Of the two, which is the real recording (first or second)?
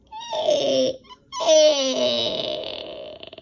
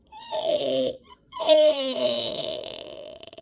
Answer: first